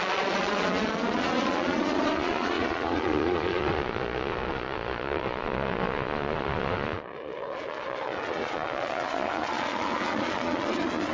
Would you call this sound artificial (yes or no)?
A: yes